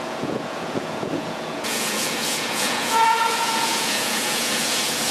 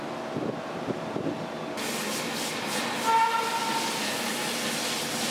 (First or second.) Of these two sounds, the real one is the second